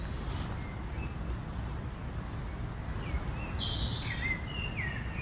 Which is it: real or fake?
real